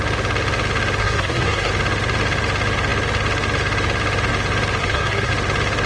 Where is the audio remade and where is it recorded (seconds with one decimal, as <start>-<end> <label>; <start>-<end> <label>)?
0.0-1.0 recorded; 1.0-1.7 remade; 1.7-4.8 recorded; 4.8-5.3 remade; 5.3-5.9 recorded